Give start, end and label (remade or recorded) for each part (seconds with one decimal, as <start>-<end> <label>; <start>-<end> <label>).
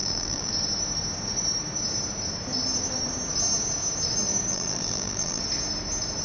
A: 0.0-0.5 remade; 0.5-4.5 recorded; 4.5-5.4 remade; 5.4-6.2 recorded